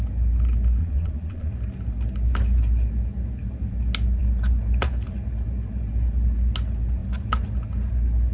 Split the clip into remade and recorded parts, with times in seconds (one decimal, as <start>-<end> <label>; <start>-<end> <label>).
0.0-0.8 recorded; 0.8-1.5 remade; 1.5-8.3 recorded